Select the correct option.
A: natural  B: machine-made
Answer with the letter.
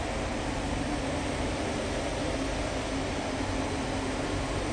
A